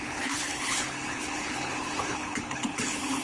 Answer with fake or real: fake